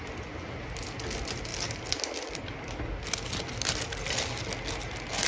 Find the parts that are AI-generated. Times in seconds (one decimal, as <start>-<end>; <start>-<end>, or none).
none